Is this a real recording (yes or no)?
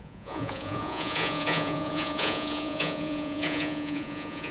no